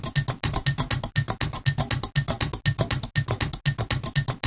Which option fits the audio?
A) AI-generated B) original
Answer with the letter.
B